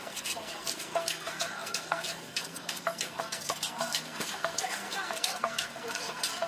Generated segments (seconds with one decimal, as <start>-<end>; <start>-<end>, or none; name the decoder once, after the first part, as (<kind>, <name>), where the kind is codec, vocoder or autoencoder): 0.0-6.5 (codec, SNAC)